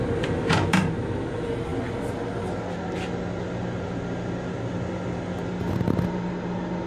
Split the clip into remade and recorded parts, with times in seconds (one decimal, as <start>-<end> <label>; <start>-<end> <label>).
0.0-6.9 recorded